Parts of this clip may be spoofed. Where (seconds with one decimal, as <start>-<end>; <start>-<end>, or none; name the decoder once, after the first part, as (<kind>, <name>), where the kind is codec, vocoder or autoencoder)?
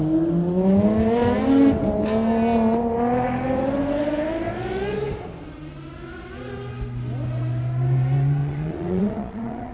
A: 8.4-9.7 (vocoder, Vocos)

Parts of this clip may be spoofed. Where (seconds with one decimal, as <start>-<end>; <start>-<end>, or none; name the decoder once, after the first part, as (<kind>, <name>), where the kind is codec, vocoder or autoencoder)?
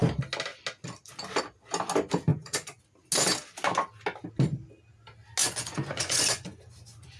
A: 2.3-2.8 (vocoder, Vocos); 5.4-6.6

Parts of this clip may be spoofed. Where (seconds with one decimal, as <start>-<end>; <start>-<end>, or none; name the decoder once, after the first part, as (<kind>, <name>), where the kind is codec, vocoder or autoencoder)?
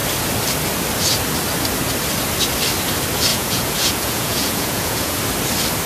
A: 3.3-5.2 (vocoder, Vocos)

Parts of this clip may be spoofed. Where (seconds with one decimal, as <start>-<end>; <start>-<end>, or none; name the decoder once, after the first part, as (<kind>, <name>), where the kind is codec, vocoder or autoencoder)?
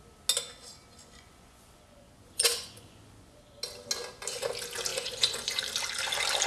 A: 1.0-3.4 (vocoder, Vocos); 4.9-5.6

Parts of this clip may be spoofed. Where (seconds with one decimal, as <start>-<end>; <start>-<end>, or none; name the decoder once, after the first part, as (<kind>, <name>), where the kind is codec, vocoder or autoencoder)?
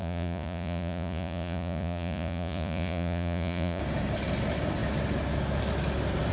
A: 0.0-3.8 (vocoder, Vocos)